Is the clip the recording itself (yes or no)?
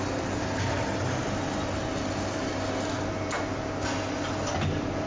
yes